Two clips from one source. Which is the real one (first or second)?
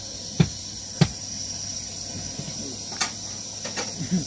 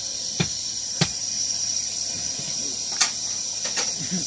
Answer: first